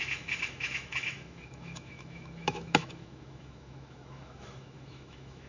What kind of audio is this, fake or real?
fake